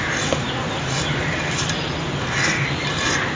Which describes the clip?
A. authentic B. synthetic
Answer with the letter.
A